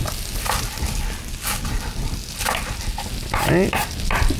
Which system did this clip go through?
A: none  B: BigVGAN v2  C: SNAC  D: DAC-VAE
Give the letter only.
A